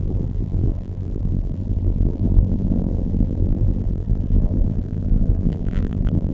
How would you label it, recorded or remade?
remade